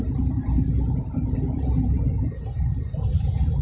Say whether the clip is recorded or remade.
remade